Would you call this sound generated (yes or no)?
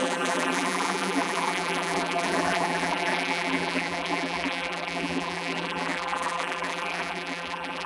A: yes